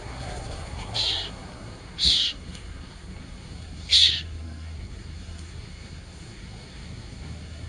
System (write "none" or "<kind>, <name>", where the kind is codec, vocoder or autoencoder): codec, SNAC